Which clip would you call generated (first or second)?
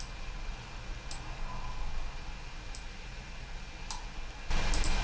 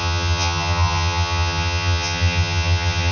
second